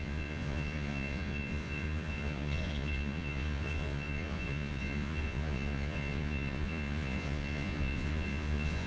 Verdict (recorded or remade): remade